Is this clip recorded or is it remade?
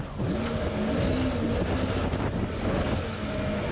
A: recorded